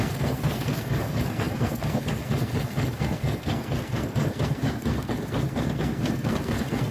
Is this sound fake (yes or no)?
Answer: yes